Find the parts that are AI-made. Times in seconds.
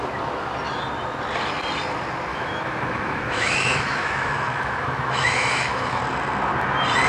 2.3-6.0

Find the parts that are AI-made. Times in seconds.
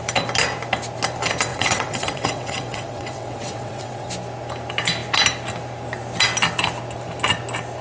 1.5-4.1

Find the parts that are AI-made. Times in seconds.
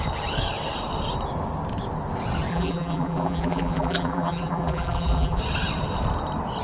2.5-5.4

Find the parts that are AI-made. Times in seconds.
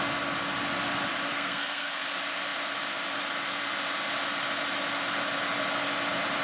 1.3-2.0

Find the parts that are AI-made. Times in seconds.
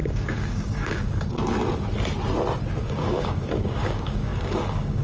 0.0-1.4; 2.8-5.0